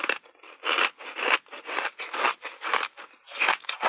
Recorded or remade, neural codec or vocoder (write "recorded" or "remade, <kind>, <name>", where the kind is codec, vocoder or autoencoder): recorded